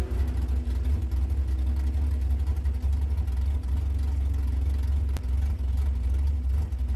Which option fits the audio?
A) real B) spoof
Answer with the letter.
A